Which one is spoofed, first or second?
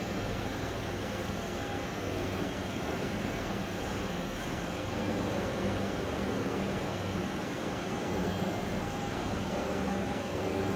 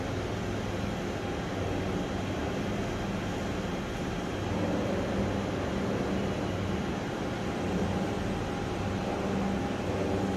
first